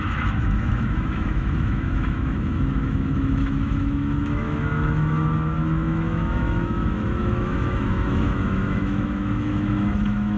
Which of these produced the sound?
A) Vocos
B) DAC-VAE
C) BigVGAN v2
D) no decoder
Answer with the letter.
B